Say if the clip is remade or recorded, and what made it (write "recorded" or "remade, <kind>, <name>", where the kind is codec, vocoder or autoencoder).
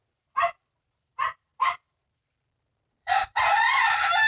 remade, vocoder, BigVGAN v2